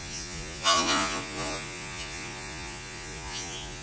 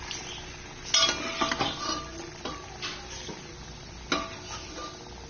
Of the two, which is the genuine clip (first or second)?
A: second